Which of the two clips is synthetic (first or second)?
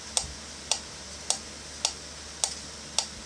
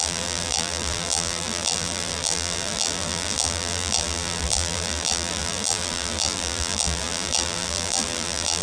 second